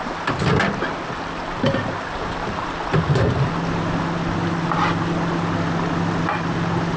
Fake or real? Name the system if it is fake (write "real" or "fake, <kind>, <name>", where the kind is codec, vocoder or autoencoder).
real